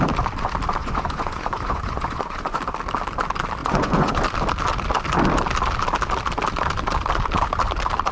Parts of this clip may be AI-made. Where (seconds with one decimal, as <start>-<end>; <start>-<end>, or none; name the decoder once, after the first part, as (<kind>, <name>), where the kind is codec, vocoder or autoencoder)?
0.8-2.6 (vocoder, Vocos); 3.6-4.2